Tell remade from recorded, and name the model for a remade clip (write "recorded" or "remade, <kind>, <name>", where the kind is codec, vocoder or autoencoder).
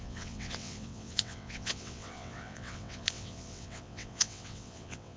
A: remade, vocoder, WaveNeXt